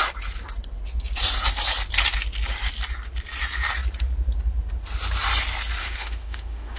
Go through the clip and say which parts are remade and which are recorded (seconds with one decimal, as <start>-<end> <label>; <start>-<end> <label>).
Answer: 0.0-5.8 recorded; 5.8-6.8 remade